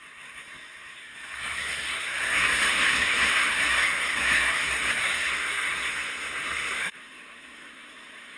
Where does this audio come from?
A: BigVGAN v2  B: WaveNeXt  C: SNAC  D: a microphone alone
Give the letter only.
C